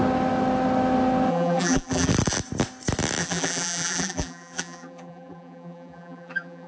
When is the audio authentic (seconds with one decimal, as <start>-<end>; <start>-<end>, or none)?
0.0-1.3; 2.1-3.2